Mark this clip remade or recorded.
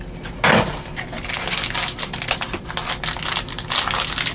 recorded